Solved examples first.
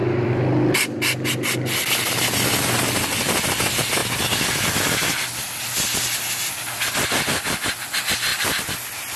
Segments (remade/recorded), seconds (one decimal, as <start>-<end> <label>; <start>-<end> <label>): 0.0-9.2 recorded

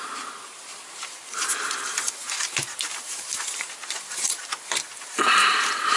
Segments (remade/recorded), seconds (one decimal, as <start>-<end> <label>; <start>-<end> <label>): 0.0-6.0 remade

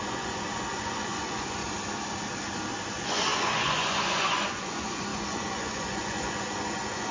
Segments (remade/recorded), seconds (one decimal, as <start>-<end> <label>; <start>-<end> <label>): 0.0-1.6 remade; 1.6-2.9 recorded; 2.9-7.1 remade

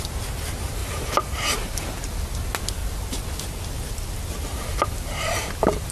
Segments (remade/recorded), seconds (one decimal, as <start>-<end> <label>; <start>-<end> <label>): 0.0-0.8 recorded; 0.8-1.9 remade; 1.9-4.5 recorded; 4.5-5.5 remade; 5.5-5.9 recorded